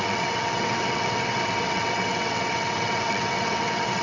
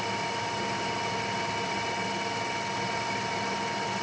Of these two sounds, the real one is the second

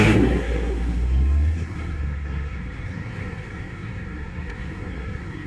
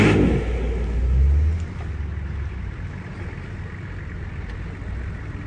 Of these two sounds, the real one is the second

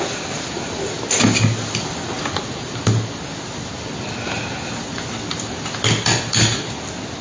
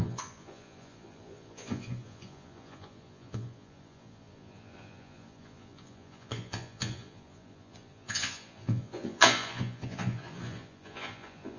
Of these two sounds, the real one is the first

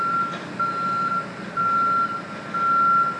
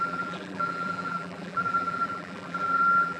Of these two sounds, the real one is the first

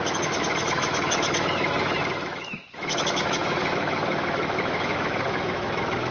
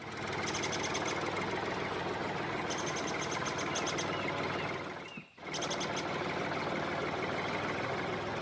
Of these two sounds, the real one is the second